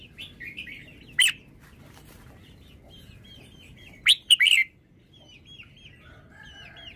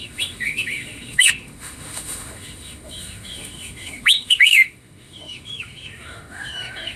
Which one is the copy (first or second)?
second